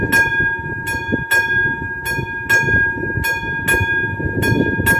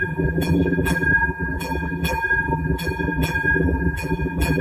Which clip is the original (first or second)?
first